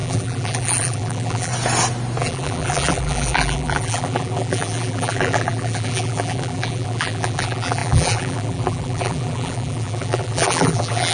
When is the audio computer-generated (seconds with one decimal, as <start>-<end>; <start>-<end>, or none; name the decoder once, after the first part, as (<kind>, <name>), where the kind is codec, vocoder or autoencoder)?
0.0-1.5 (vocoder, BigVGAN v2); 2.2-11.1